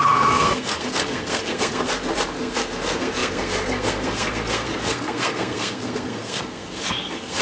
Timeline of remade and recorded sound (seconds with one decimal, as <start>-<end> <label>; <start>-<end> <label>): 0.0-1.9 remade; 1.9-2.4 recorded; 2.4-7.4 remade